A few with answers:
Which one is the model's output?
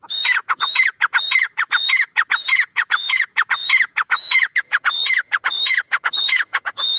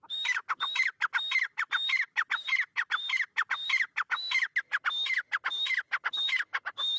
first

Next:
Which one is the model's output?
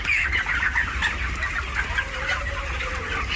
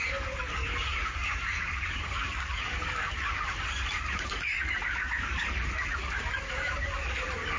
second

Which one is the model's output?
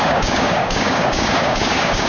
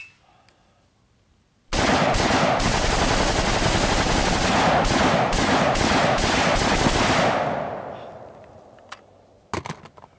first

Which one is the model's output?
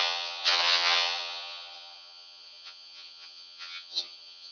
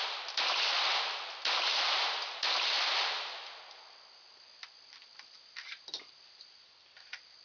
first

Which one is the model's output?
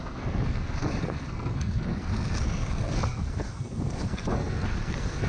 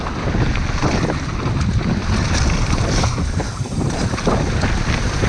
first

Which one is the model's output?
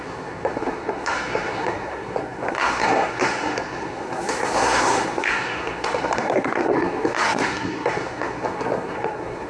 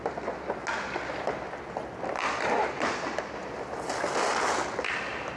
first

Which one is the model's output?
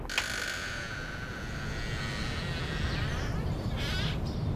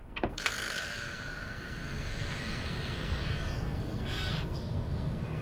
second